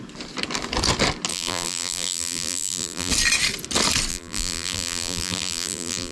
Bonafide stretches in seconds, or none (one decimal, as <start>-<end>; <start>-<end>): 0.0-1.3; 3.1-4.1